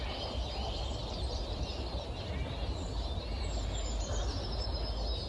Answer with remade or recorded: recorded